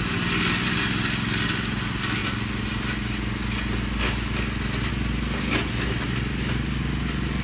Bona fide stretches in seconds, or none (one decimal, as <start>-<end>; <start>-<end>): 0.0-7.4